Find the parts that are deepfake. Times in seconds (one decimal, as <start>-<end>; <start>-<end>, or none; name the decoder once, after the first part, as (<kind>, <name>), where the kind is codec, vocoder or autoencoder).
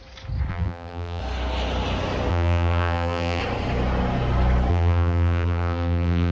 0.5-1.2 (vocoder, BigVGAN v2); 2.3-3.4; 4.7-6.3